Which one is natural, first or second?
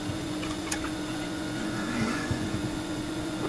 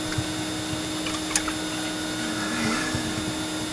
second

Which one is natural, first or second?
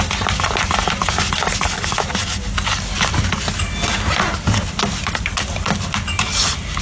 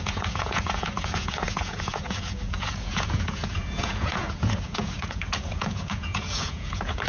first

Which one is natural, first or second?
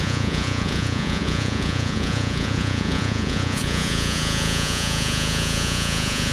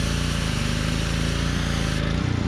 second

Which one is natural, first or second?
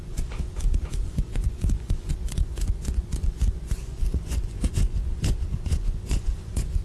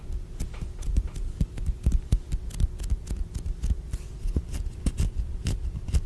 second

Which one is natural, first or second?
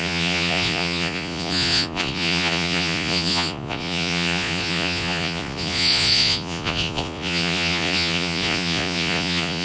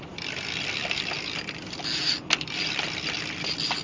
second